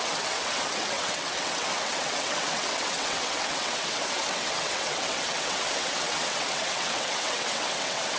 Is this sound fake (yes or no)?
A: yes